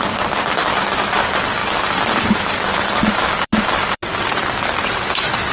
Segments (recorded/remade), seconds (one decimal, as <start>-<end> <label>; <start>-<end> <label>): 0.0-5.5 remade